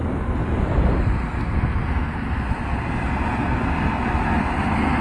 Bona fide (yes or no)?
yes